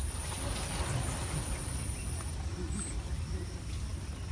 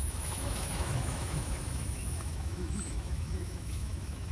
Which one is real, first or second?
first